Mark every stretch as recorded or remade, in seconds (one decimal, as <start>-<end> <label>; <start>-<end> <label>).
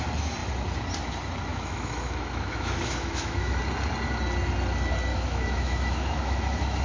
0.0-1.5 recorded; 1.5-3.6 remade; 3.6-5.1 recorded; 5.1-6.8 remade